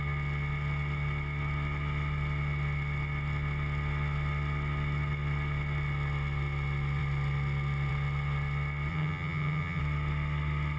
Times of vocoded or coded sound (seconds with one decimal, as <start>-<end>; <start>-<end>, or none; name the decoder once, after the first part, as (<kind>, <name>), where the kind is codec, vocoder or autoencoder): 8.9-9.8 (vocoder, HiFi-GAN)